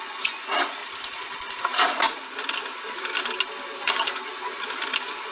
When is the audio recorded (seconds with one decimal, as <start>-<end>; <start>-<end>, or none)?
0.8-3.8; 4.3-5.3